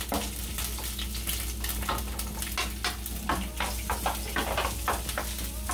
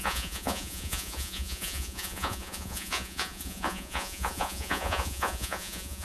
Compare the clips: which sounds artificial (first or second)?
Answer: second